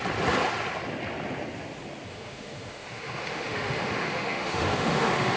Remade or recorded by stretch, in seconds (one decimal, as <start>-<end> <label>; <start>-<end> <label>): 0.0-2.1 recorded; 2.1-5.4 remade